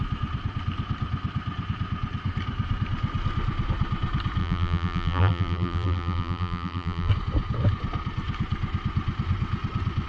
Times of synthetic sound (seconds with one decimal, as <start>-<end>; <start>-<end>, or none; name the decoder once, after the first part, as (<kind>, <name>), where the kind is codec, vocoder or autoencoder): 4.4-7.1 (vocoder, BigVGAN v2)